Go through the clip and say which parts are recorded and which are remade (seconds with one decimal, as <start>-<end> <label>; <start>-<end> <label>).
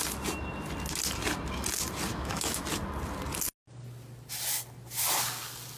0.0-2.1 recorded; 2.1-2.6 remade; 2.6-5.8 recorded